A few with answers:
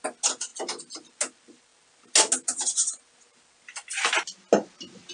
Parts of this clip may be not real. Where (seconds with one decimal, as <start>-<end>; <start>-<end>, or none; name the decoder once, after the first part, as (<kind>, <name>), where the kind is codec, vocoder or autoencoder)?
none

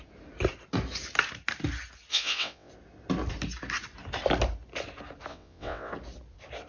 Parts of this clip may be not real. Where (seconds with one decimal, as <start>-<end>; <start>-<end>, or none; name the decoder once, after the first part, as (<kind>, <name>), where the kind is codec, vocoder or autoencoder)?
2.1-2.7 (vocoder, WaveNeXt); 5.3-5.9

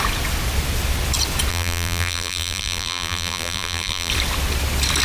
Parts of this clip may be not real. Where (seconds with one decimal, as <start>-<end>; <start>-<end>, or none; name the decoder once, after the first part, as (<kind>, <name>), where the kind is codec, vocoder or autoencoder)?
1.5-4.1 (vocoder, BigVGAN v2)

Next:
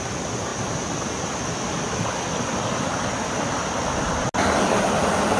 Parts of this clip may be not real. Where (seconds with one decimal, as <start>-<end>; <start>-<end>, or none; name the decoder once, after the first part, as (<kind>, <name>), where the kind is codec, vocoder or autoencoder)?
none